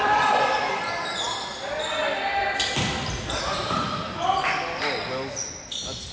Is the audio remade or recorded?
recorded